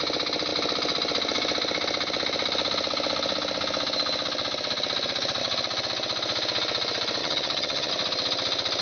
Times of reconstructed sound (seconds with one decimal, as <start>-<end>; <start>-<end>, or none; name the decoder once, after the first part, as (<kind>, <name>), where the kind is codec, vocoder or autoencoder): 7.2-7.9 (vocoder, HiFi-GAN)